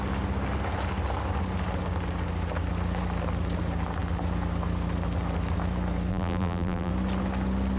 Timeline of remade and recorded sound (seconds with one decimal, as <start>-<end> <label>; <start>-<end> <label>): 0.0-6.1 recorded; 6.1-6.9 remade; 6.9-7.8 recorded